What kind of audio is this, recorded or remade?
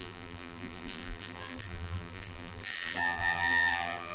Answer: remade